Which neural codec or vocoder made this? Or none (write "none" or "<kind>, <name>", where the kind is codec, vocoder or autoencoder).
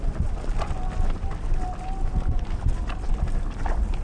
none